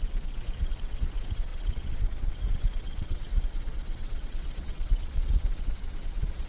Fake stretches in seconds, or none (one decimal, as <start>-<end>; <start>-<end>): 0.0-6.5